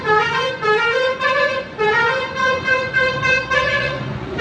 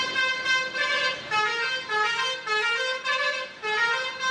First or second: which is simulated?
first